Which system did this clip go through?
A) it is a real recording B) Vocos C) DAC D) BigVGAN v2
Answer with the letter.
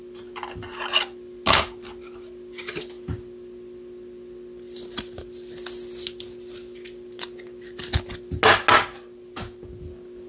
A